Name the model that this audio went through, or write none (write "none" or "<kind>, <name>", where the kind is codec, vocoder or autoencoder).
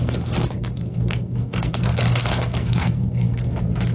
codec, SNAC